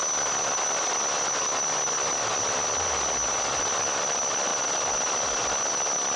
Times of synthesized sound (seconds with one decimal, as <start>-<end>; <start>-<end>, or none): none